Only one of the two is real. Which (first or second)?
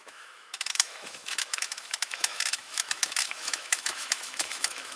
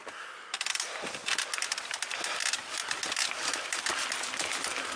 second